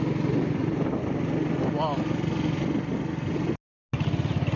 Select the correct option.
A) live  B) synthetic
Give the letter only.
A